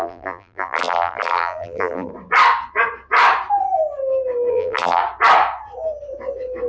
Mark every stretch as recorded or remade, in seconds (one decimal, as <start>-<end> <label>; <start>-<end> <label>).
0.0-2.1 remade; 2.1-4.5 recorded; 4.5-5.0 remade; 5.0-6.7 recorded

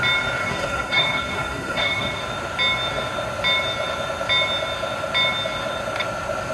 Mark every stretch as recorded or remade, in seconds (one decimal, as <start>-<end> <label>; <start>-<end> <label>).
0.0-0.4 recorded; 0.4-2.2 remade; 2.2-6.5 recorded